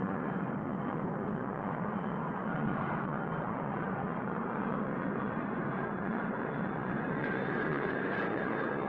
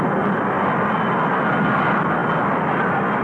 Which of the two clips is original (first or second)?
second